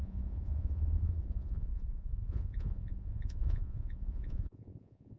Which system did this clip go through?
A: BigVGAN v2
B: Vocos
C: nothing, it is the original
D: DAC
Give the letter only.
B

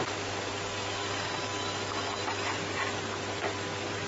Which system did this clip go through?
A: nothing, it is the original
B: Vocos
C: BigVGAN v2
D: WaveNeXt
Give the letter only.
A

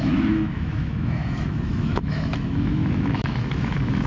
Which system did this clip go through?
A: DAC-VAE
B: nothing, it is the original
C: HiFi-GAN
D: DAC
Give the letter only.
A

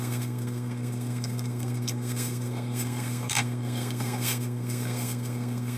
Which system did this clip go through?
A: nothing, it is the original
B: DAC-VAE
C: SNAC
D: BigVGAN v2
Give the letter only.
C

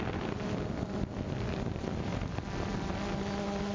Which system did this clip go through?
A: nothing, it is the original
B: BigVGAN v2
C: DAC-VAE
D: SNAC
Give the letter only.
A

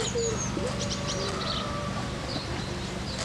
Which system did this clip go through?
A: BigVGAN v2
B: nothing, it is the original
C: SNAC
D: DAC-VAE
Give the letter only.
A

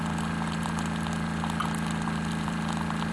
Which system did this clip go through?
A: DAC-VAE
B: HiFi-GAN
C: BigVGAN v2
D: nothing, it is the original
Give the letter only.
C